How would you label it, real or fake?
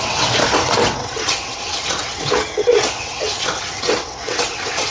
fake